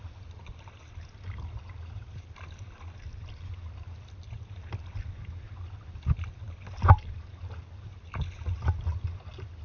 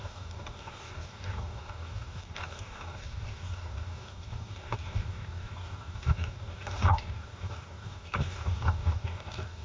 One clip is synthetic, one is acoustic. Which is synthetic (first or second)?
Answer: second